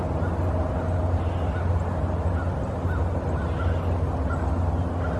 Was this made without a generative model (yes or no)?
yes